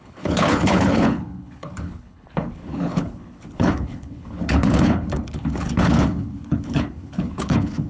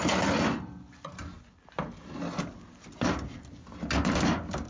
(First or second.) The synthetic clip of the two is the first